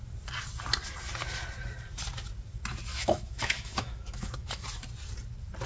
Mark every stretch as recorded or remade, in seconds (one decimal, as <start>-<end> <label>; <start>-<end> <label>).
0.0-2.9 recorded; 2.9-4.6 remade; 4.6-5.7 recorded